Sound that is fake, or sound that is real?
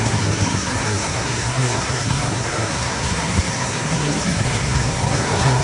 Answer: fake